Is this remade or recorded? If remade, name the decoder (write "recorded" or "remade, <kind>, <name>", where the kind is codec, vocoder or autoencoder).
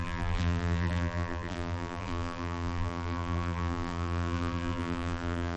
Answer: remade, vocoder, BigVGAN v2